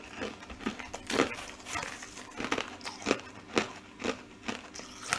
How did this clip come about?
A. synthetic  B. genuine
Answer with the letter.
B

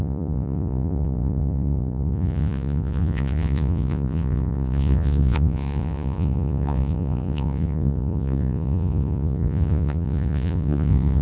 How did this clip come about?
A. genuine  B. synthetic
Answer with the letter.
B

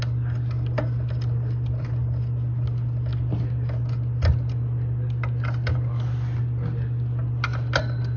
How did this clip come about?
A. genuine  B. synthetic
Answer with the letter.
A